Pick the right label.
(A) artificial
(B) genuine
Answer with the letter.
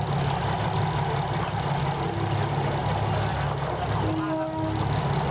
B